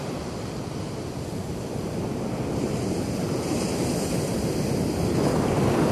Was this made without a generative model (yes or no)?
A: yes